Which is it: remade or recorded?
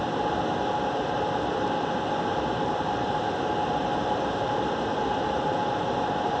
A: recorded